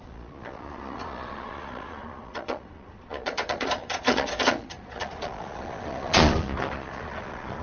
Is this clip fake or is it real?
fake